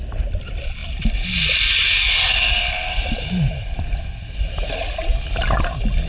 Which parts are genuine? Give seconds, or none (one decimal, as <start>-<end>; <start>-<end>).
0.0-6.1